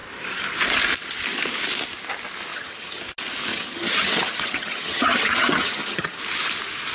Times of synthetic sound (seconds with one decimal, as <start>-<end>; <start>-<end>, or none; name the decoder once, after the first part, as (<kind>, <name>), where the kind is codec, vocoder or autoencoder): 2.5-3.0 (vocoder, HiFi-GAN); 3.5-6.2